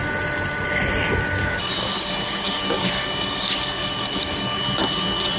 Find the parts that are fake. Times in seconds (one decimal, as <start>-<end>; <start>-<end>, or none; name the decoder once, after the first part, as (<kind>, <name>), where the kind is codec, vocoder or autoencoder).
1.4-4.6 (codec, DAC)